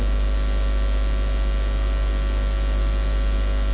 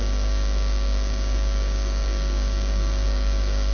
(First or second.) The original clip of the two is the first